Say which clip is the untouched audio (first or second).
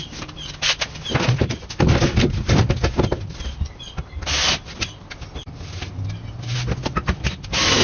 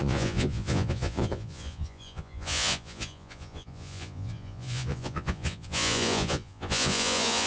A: first